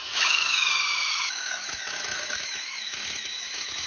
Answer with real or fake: fake